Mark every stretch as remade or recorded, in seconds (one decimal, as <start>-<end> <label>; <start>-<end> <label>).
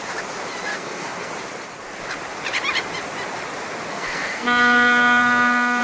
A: 0.0-0.7 recorded; 0.7-1.3 remade; 1.3-3.9 recorded; 3.9-5.8 remade